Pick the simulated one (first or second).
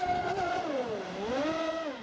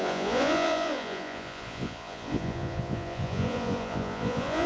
second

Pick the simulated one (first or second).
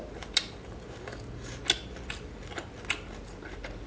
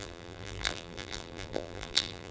second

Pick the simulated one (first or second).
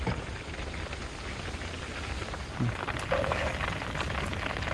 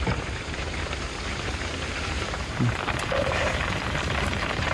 second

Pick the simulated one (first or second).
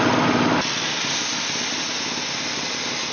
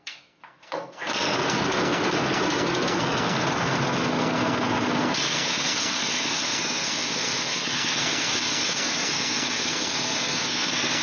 second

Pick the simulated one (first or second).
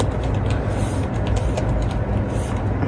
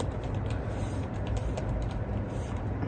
second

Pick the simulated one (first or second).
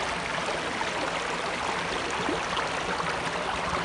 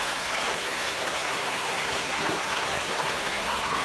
second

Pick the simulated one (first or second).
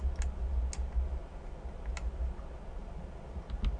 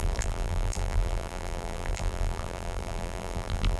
second